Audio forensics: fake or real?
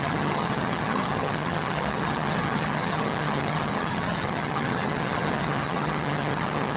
fake